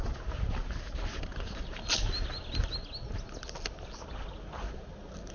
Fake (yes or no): no